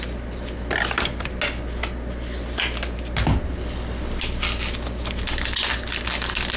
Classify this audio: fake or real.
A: real